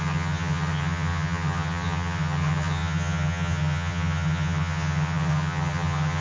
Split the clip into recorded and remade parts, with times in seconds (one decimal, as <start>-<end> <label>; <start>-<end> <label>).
0.0-6.2 remade